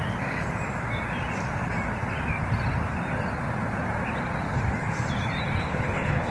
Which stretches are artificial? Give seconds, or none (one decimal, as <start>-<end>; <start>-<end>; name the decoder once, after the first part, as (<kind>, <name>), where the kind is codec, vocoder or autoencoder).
5.6-6.3 (codec, HILCodec)